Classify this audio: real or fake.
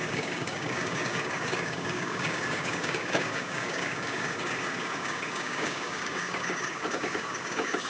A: fake